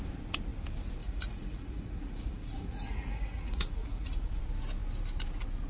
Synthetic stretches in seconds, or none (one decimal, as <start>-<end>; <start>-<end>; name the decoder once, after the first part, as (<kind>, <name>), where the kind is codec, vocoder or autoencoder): 1.0-4.4 (vocoder, Vocos)